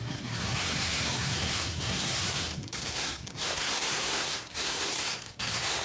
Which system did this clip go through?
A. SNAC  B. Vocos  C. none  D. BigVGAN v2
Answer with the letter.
A